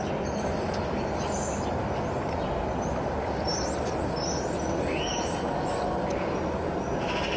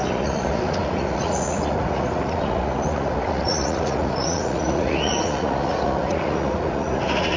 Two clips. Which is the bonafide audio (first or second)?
first